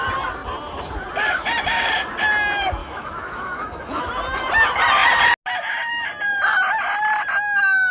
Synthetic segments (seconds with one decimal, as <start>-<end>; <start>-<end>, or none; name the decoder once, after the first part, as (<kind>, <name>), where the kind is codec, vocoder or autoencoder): 2.8-4.1 (autoencoder, DAC-VAE)